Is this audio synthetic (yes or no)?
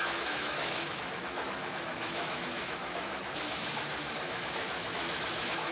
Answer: yes